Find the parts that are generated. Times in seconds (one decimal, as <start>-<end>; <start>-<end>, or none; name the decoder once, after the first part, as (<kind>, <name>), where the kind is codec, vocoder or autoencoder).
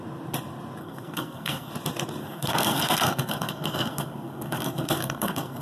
0.8-1.7 (codec, SNAC); 2.2-5.6